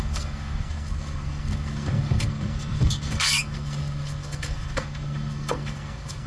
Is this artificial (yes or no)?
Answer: yes